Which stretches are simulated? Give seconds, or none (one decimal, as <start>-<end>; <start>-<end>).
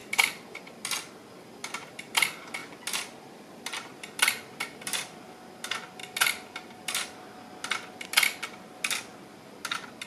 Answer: 2.6-5.2